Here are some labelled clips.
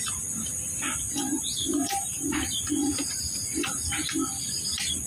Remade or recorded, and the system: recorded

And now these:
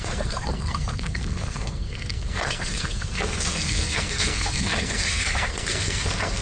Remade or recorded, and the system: remade, codec, SNAC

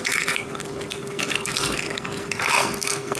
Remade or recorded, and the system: remade, codec, SNAC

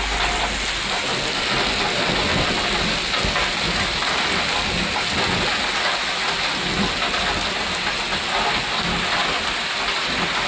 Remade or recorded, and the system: recorded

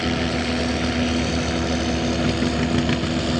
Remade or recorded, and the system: recorded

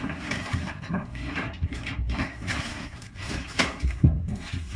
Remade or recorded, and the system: remade, codec, SNAC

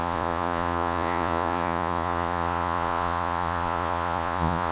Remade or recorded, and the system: remade, vocoder, Vocos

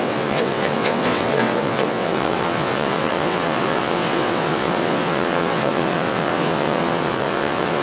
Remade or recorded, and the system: remade, vocoder, WaveNeXt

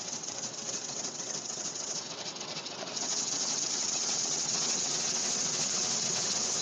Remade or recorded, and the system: remade, vocoder, WaveNeXt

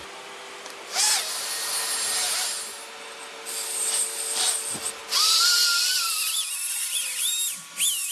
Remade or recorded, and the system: recorded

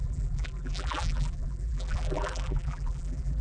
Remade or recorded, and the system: remade, vocoder, BigVGAN v2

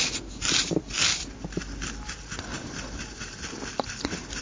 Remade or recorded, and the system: recorded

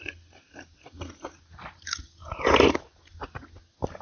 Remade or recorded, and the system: recorded